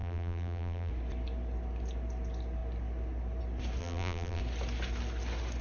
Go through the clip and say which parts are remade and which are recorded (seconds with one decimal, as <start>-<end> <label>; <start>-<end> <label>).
0.0-0.9 remade; 0.9-3.8 recorded; 3.8-4.4 remade; 4.4-5.6 recorded